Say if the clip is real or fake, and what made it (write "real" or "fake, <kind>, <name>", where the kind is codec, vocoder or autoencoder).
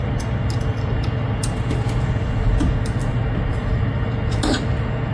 real